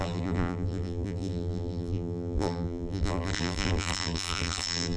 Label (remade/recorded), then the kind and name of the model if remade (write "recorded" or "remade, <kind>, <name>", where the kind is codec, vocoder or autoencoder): remade, vocoder, BigVGAN v2